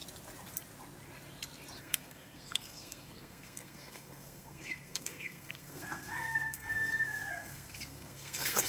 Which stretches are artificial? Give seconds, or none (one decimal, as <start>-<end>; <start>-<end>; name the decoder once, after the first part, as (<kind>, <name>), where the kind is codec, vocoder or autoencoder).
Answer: 1.8-8.7 (codec, SNAC)